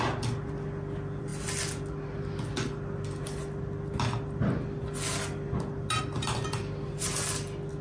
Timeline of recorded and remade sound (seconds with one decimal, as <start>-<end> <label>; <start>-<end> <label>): 0.0-7.8 recorded